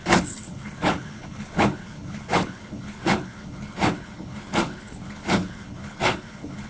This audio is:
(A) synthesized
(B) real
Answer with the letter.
A